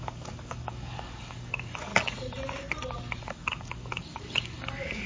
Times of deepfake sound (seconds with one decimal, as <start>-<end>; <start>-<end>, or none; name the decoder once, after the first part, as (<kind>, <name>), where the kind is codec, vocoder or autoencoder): 0.0-1.9 (codec, DAC); 3.2-5.1